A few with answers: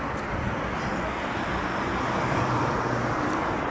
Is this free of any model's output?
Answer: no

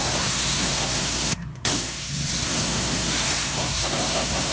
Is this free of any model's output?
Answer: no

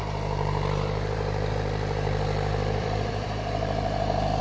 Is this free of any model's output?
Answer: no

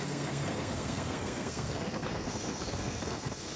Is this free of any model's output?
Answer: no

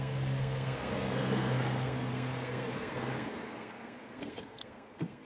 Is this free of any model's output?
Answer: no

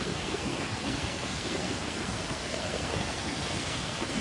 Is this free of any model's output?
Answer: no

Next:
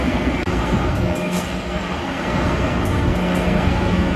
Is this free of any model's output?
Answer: no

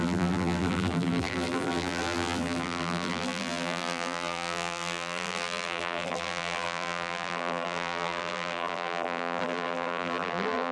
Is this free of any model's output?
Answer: no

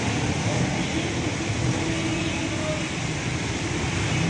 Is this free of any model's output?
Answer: yes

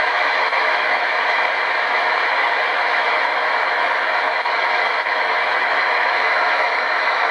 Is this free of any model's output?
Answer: no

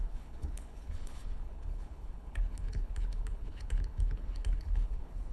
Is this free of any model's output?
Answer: no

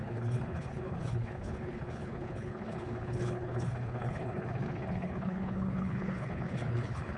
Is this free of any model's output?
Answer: no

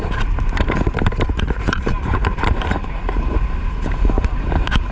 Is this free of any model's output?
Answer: no